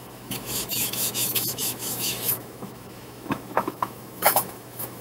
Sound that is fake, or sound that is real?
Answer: fake